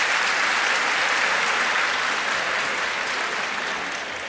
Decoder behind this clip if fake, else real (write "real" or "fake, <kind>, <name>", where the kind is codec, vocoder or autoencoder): real